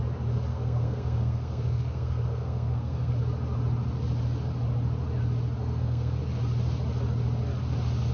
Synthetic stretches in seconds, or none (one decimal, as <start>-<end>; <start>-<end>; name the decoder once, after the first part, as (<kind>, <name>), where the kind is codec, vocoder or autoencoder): 0.5-3.1 (codec, SNAC); 5.6-6.2